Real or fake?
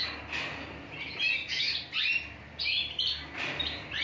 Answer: real